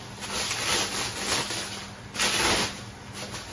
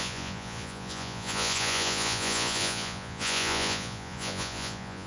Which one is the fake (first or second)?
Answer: second